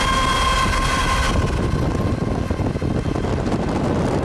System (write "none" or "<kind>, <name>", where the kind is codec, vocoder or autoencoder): none